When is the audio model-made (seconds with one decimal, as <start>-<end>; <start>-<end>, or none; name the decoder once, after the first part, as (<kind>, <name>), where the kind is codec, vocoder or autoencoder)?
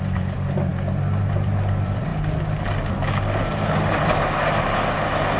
0.0-0.7 (vocoder, BigVGAN v2); 1.2-2.1